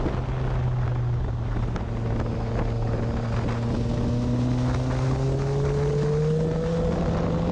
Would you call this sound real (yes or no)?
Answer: yes